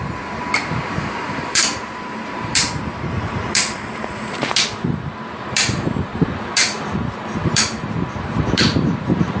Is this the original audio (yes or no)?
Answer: no